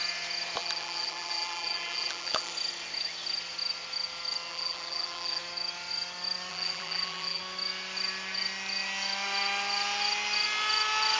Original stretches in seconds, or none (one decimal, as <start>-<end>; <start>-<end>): 0.0-0.6; 2.5-4.5; 5.4-6.5; 7.4-11.2